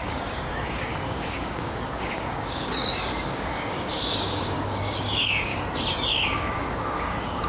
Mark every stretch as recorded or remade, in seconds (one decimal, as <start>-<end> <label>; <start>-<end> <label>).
0.0-5.5 remade; 5.5-6.1 recorded; 6.1-7.5 remade